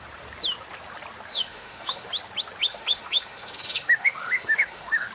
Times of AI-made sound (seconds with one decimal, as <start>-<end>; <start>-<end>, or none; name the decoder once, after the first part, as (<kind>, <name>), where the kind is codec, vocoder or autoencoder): 1.3-2.1 (autoencoder, DAC-VAE); 2.6-5.1